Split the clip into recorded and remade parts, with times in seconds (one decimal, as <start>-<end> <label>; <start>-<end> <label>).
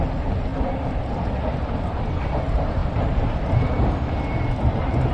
0.0-5.1 recorded